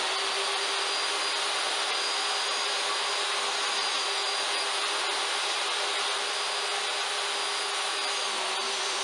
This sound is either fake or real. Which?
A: real